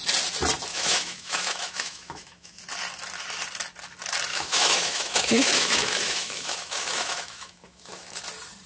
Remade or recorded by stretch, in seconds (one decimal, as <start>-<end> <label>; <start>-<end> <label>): 0.0-0.7 recorded; 0.7-2.6 remade; 2.6-4.3 recorded; 4.3-8.2 remade; 8.2-8.7 recorded